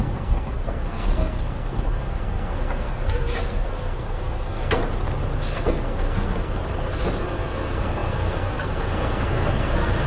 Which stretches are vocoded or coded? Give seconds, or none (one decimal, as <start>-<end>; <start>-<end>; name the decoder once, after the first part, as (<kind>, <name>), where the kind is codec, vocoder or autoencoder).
0.0-4.8 (codec, SNAC); 5.5-6.6; 7.2-10.1